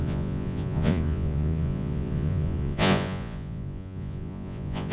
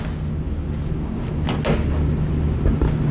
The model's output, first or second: first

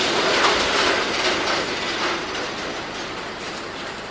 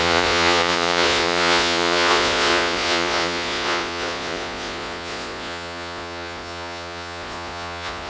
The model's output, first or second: second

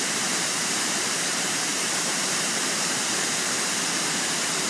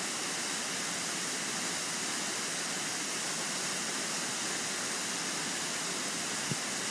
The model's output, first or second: first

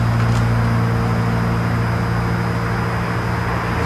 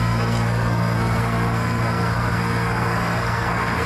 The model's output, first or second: second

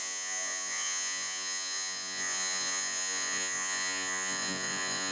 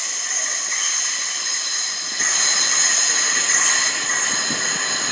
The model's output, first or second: first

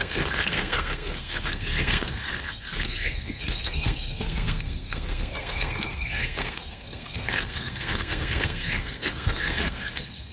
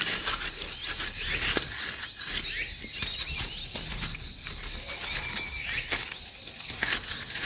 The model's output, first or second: first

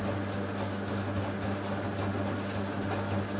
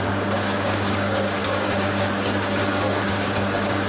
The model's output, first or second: second